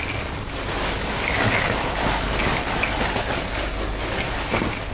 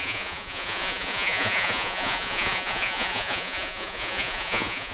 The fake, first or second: second